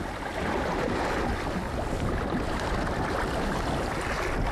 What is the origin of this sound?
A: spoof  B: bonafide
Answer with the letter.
B